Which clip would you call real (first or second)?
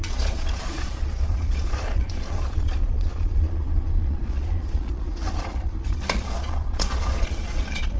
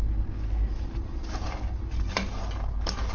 second